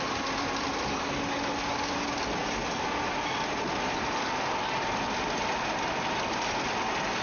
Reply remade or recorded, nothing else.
recorded